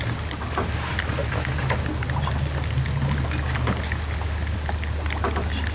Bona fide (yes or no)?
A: yes